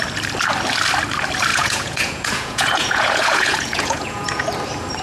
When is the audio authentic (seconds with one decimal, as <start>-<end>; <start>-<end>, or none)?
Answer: 0.0-1.5; 4.5-5.0